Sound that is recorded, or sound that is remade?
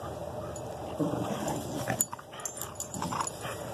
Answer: recorded